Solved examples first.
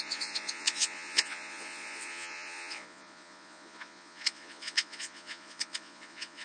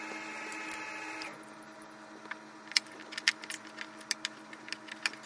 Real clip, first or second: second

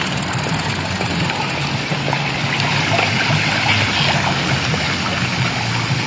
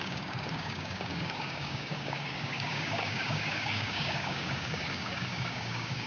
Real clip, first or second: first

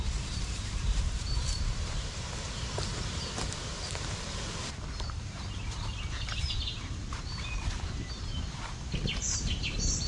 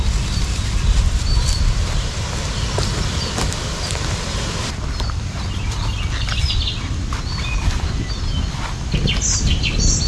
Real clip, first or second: second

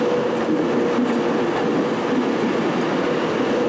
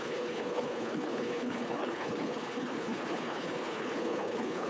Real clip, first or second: first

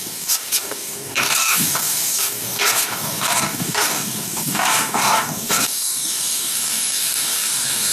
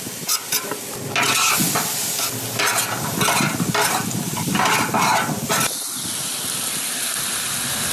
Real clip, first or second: second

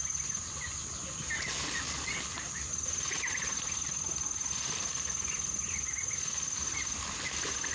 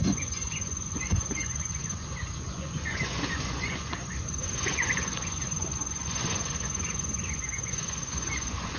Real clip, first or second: first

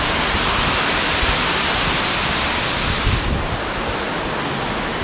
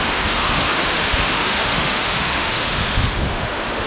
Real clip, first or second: first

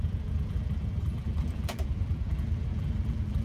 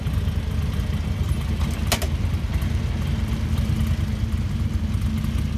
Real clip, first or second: second